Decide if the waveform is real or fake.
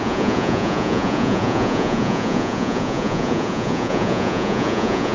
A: fake